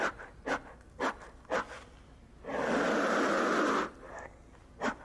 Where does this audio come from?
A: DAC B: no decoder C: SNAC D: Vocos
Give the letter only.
B